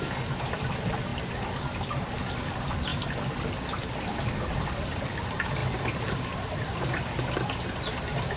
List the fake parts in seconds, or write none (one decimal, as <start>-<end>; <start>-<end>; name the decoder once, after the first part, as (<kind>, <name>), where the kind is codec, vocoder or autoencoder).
0.0-1.1 (vocoder, BigVGAN v2); 2.5-2.9; 4.0-8.4